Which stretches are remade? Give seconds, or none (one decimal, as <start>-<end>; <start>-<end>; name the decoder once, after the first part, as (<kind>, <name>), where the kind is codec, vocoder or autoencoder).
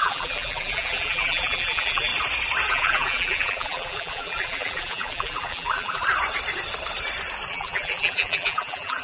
0.0-2.1 (vocoder, BigVGAN v2); 2.7-6.0; 7.5-9.0